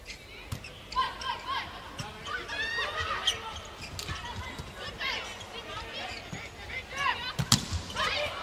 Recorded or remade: recorded